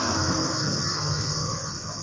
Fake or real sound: fake